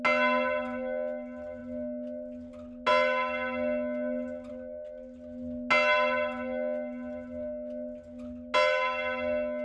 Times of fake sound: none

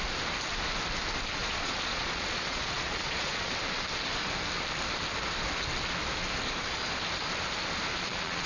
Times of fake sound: 1.4-3.5; 7.9-8.5

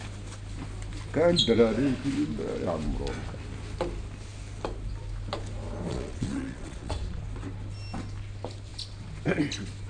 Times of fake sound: 5.9-7.2

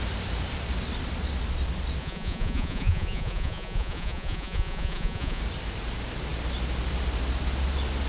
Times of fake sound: 2.0-5.4

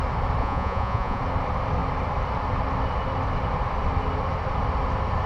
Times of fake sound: 0.4-1.2

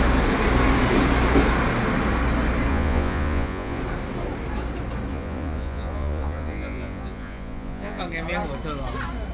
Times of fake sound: 2.7-3.8; 5.1-8.0

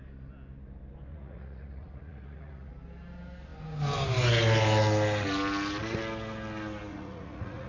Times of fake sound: 1.1-2.7; 6.9-7.7